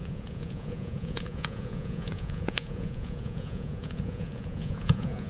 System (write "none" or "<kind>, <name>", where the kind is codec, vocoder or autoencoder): vocoder, Vocos